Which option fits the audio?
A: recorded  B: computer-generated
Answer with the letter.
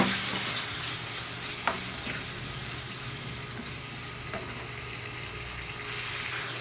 A